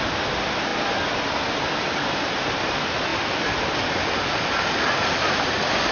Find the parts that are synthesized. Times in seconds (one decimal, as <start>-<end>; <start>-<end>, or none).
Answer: none